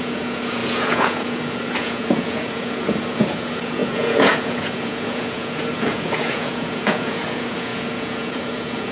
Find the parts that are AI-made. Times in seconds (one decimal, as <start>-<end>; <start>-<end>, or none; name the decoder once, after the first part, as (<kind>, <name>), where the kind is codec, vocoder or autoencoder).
0.0-8.9 (vocoder, Vocos)